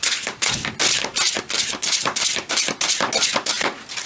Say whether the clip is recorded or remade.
recorded